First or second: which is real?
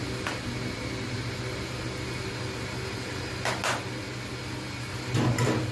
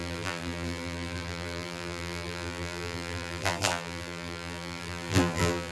first